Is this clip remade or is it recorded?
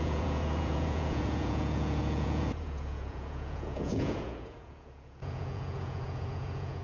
remade